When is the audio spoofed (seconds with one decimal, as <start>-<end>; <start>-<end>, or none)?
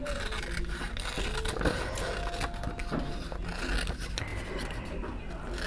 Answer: none